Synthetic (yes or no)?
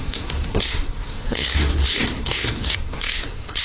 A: yes